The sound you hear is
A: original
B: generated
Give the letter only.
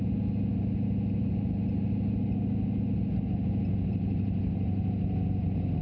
A